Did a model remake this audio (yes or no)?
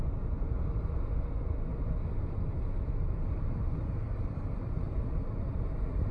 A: no